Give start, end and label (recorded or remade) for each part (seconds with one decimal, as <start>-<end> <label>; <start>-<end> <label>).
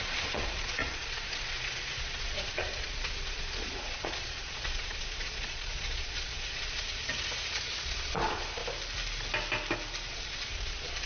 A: 0.0-8.6 remade; 8.6-10.1 recorded; 10.1-11.1 remade